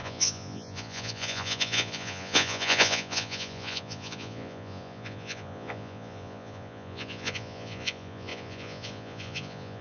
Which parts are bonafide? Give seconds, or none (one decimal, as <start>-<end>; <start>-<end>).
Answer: none